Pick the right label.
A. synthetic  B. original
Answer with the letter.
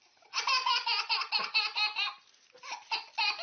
B